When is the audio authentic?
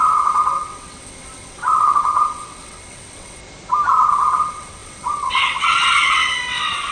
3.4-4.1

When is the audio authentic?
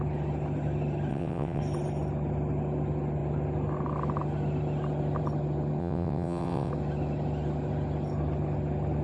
0.0-1.1; 1.6-5.8; 6.7-9.0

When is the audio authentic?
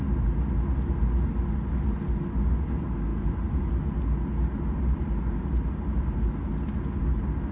0.0-7.5